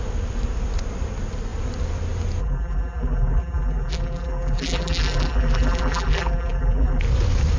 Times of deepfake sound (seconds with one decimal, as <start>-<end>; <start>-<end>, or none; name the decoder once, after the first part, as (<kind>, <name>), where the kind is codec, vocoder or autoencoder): 2.4-7.0 (vocoder, BigVGAN v2)